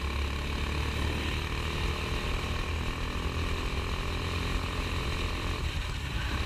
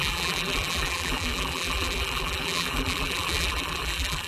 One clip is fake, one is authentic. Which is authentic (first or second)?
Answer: first